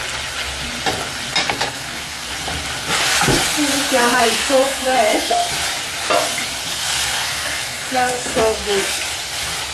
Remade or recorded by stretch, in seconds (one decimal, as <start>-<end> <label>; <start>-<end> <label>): 0.0-1.4 recorded; 1.4-2.3 remade; 2.3-4.0 recorded; 4.0-5.5 remade; 5.5-6.7 recorded; 6.7-9.0 remade; 9.0-9.7 recorded

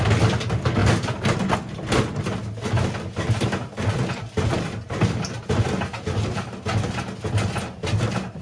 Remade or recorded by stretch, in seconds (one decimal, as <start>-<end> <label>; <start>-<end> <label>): 0.0-8.4 recorded

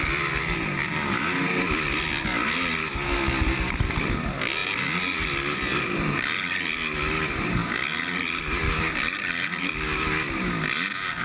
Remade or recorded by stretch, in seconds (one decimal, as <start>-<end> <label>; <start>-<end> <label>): 0.0-11.2 recorded

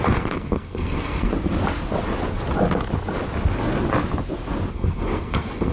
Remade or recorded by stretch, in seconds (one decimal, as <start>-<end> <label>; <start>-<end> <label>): 0.0-1.3 remade; 1.3-4.7 recorded; 4.7-5.7 remade

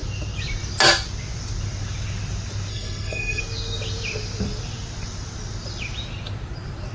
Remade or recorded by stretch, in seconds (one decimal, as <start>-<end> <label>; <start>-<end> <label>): 0.0-2.7 recorded; 2.7-3.4 remade; 3.4-6.9 recorded

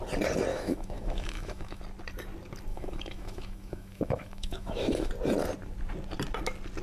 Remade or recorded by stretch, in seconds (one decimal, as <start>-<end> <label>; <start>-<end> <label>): 0.0-0.5 recorded; 0.5-1.8 remade; 1.8-2.7 recorded; 2.7-5.1 remade; 5.1-6.8 recorded

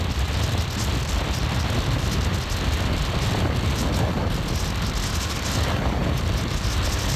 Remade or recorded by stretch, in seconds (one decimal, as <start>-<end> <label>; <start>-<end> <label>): 0.0-7.2 recorded